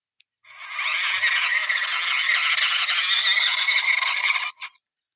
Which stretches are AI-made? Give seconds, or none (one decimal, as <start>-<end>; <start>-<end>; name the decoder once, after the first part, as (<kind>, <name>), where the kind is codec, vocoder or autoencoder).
none